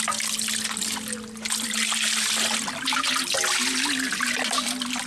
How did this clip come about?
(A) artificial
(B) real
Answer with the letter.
B